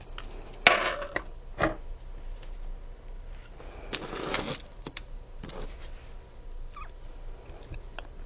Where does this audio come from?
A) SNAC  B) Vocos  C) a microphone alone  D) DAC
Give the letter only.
C